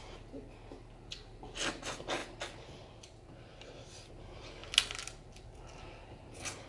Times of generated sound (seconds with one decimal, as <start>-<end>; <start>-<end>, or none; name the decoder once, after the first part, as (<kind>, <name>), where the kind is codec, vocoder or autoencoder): none